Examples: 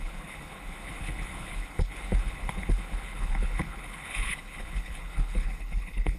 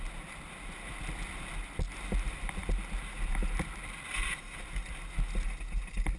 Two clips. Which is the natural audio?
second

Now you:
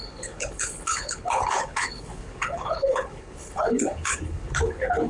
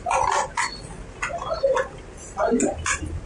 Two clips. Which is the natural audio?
second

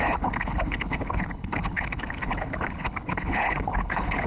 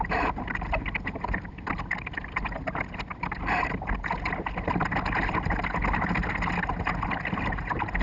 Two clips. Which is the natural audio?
second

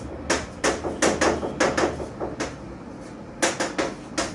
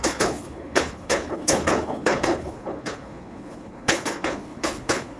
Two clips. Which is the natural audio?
first